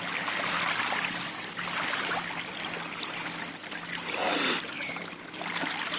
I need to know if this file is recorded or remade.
recorded